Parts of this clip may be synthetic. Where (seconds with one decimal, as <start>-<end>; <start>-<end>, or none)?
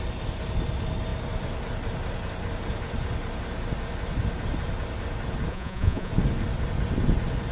5.5-6.1